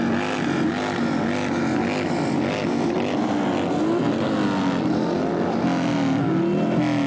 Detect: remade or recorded recorded